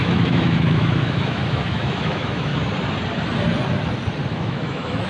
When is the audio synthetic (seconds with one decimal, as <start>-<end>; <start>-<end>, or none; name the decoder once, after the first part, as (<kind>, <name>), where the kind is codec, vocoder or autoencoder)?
0.0-2.5 (autoencoder, DAC-VAE); 4.3-5.1